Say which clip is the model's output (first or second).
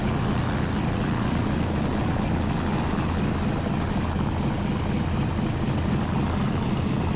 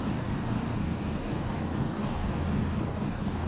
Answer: second